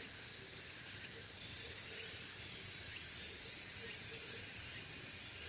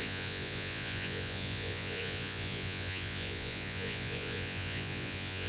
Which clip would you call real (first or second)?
first